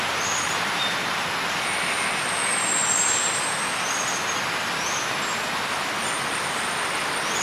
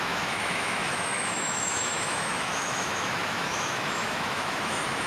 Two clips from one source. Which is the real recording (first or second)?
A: first